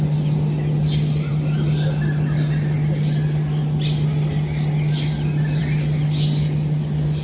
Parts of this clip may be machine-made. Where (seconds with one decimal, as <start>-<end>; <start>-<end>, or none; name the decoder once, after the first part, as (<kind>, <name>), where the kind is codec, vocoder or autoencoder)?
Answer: none

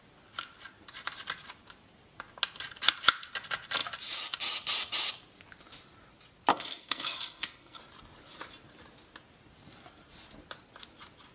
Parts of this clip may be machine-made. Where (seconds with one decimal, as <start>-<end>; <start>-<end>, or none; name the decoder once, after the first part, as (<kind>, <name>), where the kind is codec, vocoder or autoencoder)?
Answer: 6.5-7.8 (codec, SNAC)

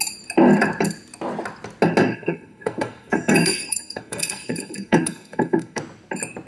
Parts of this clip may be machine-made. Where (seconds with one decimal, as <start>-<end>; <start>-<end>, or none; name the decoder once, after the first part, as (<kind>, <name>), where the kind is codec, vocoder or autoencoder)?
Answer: 2.1-5.8 (codec, SNAC)

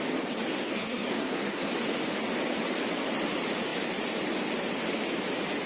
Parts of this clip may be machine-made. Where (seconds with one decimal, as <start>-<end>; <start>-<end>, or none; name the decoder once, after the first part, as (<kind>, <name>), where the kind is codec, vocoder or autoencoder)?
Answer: 0.5-1.7 (codec, SNAC)

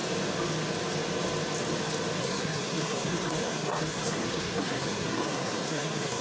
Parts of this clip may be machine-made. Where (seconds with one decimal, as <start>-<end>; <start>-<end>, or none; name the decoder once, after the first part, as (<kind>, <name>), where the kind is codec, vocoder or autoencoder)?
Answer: 2.2-6.2 (codec, SNAC)

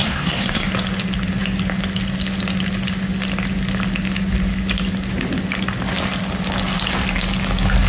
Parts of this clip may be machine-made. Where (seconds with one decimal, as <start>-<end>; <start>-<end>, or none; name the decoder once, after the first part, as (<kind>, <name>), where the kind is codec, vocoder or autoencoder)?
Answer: 0.0-0.7 (codec, SNAC)